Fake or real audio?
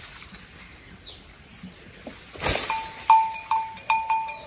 real